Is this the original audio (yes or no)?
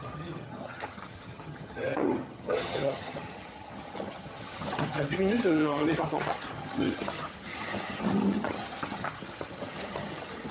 no